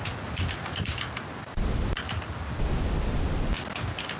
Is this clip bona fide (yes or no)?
yes